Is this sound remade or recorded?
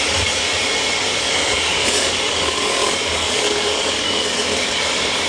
remade